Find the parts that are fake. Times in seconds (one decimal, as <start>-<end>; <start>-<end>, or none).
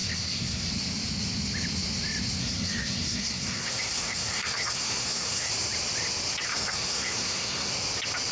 0.0-0.7; 2.4-5.5; 6.5-7.7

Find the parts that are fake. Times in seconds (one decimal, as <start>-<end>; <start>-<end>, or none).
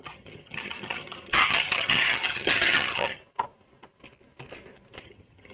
0.0-3.2; 5.0-5.5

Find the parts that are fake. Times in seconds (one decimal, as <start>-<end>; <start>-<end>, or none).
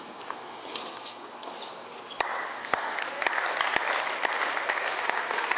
0.0-1.7; 2.6-3.0; 4.7-5.6